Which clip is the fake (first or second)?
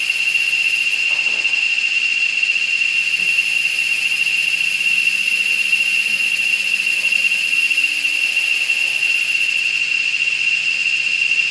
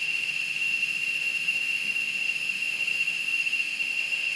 second